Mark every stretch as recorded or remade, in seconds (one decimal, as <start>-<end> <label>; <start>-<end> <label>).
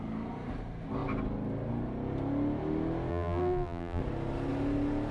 0.0-3.1 recorded; 3.1-4.0 remade; 4.0-5.1 recorded